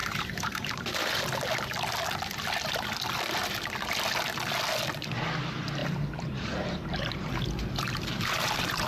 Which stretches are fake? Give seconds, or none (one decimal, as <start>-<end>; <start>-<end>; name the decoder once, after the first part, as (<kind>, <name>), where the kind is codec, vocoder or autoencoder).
0.0-1.2 (vocoder, BigVGAN v2); 5.8-8.9